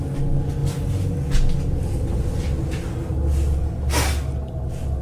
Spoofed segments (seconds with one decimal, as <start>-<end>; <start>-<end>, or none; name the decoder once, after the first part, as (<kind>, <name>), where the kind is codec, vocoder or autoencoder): none

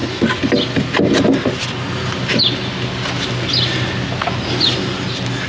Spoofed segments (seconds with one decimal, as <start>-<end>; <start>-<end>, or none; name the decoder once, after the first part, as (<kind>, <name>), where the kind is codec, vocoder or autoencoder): none

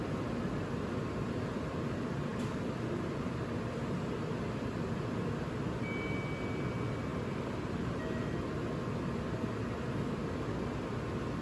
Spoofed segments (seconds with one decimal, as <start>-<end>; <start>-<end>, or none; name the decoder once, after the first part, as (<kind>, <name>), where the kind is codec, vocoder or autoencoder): 7.1-8.4 (vocoder, BigVGAN v2)

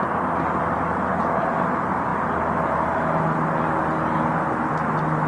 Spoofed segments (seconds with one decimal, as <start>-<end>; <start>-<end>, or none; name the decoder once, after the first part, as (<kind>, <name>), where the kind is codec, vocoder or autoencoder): none